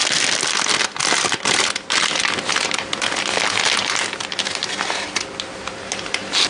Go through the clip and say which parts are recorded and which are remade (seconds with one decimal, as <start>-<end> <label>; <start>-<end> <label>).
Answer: 0.0-6.5 recorded